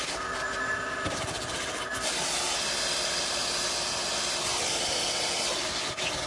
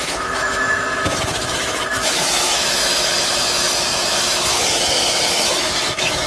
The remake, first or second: second